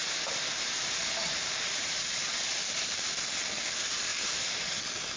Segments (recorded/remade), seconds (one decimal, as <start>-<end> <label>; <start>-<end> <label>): 0.0-3.1 remade; 3.1-4.1 recorded; 4.1-4.8 remade; 4.8-5.2 recorded